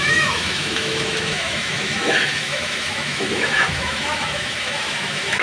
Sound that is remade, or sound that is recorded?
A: remade